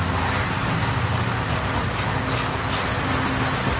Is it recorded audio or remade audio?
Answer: recorded